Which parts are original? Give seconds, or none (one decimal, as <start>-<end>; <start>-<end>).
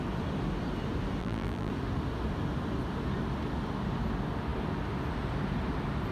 0.0-1.2; 1.7-6.1